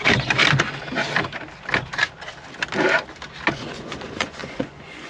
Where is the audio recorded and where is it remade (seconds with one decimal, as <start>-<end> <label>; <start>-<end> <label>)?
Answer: 0.0-0.4 remade; 0.4-3.5 recorded; 3.5-5.1 remade